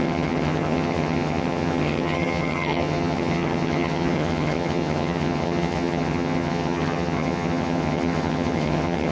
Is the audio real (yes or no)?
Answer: no